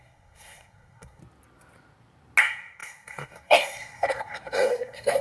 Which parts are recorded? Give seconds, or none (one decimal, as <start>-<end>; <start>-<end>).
1.2-2.4